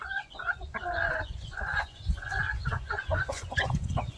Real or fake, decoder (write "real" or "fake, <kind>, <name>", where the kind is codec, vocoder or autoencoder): fake, vocoder, Vocos